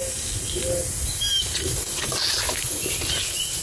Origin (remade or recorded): recorded